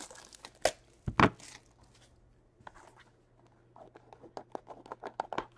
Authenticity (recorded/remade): recorded